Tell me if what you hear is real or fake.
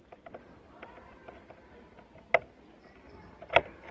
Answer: real